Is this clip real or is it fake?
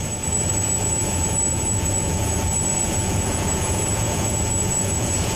fake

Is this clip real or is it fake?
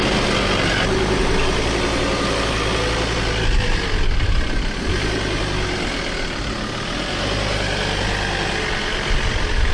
real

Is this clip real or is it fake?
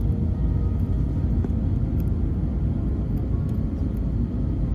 real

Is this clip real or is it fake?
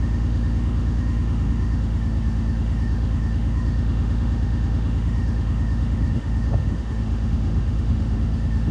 fake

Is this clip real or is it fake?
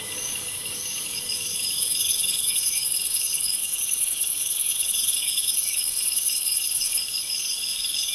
fake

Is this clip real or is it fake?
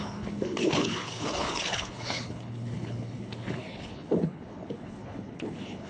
fake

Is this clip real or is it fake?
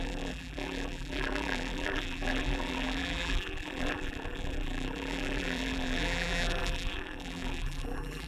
fake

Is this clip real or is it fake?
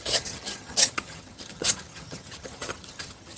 fake